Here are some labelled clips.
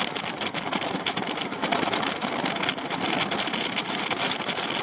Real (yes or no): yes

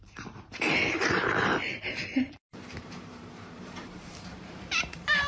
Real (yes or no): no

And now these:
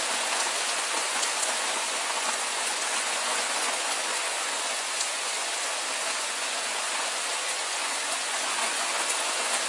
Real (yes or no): no